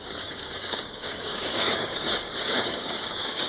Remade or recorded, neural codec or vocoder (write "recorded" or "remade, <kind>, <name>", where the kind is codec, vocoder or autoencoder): remade, codec, DAC